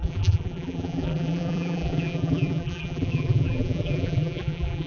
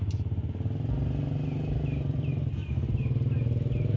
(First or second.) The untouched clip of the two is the second